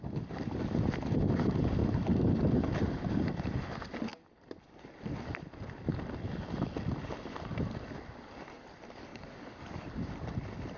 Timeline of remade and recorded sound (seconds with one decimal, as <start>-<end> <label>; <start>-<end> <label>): 0.0-9.1 recorded; 9.1-9.9 remade; 9.9-10.8 recorded